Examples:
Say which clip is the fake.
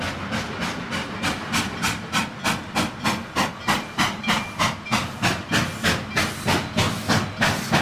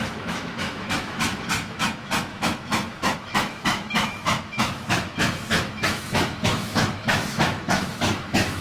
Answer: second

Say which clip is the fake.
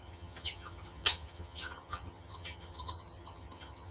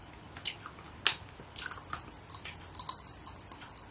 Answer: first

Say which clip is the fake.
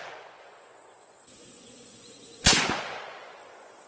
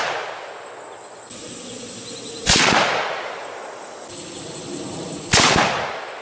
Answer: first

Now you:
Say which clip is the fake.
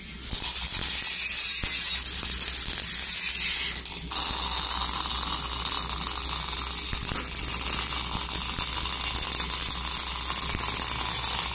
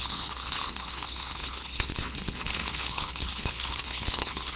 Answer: second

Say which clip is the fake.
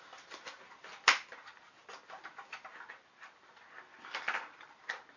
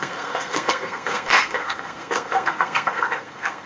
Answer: second